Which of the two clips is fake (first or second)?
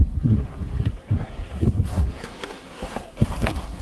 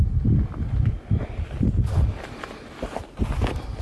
first